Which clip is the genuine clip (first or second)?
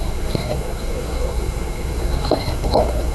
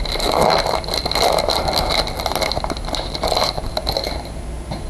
second